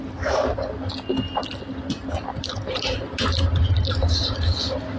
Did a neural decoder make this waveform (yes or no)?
no